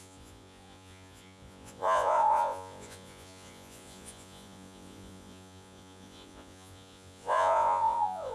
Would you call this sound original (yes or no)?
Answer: no